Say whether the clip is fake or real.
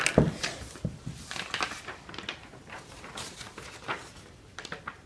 real